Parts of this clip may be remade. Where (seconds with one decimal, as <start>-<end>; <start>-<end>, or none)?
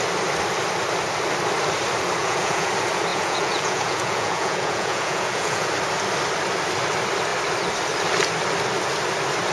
2.2-2.7; 3.1-5.7